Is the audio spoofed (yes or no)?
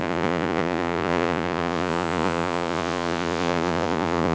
yes